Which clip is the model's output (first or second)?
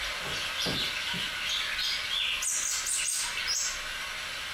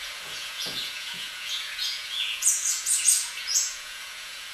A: second